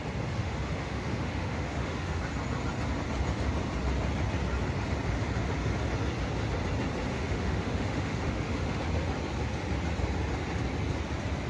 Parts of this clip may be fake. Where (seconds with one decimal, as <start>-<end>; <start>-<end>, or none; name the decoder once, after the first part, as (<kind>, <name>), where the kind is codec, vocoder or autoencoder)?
0.4-2.2 (autoencoder, DAC-VAE); 7.1-8.8